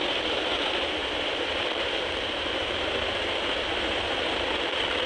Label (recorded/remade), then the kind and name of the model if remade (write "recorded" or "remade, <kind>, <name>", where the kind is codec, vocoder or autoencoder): recorded